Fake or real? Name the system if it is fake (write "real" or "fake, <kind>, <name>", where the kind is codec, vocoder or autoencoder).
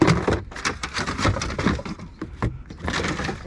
real